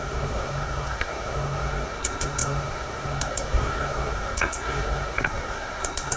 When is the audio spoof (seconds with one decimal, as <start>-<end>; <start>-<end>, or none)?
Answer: 0.0-6.2